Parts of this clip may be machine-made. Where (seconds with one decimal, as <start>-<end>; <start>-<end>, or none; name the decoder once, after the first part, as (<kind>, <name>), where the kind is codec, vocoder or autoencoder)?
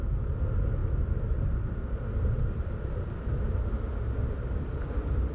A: none